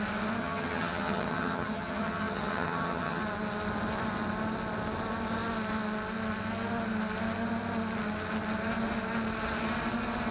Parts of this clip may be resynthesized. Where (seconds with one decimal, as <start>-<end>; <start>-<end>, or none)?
0.4-3.2

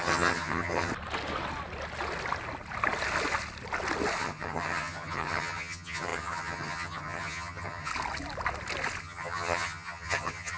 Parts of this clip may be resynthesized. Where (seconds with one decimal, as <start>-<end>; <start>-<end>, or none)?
0.0-0.9; 4.2-7.9; 9.0-10.6

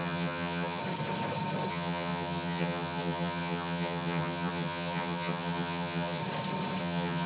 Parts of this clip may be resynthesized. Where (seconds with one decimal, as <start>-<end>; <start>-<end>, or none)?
0.0-0.8; 1.7-6.2; 6.8-7.3